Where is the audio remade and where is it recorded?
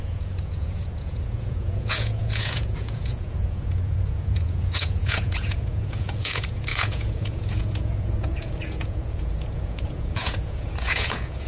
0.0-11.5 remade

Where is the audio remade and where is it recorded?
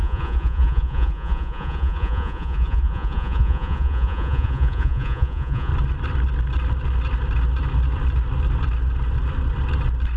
0.0-5.7 remade; 5.7-10.2 recorded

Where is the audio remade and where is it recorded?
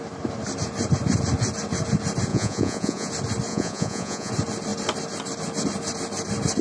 0.0-2.3 recorded; 2.3-3.1 remade; 3.1-3.5 recorded; 3.5-4.3 remade; 4.3-6.6 recorded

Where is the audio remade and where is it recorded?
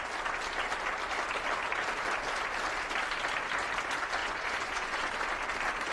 0.0-4.2 recorded; 4.2-5.1 remade; 5.1-5.9 recorded